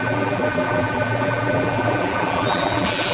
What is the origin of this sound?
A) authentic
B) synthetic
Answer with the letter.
B